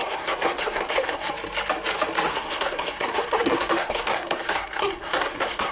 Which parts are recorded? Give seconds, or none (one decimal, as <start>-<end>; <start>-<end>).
1.3-2.3